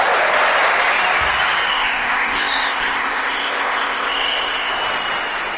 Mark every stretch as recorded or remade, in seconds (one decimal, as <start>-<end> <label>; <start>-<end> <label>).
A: 0.0-1.7 recorded; 1.7-4.7 remade; 4.7-5.6 recorded